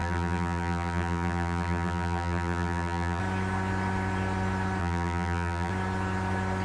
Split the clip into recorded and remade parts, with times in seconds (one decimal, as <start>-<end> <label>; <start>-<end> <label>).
0.0-3.2 remade; 3.2-4.8 recorded; 4.8-5.7 remade; 5.7-6.6 recorded